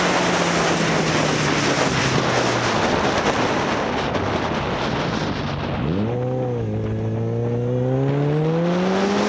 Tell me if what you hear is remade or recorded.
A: recorded